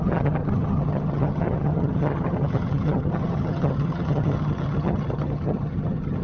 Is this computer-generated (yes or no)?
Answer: yes